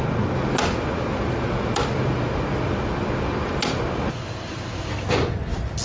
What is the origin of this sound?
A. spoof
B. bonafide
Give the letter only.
B